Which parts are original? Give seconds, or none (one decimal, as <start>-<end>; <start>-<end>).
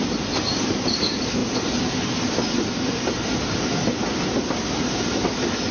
0.0-5.7